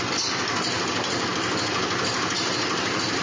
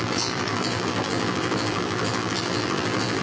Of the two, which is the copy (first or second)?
second